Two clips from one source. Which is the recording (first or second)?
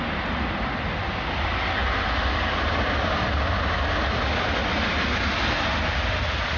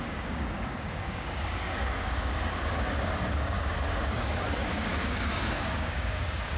first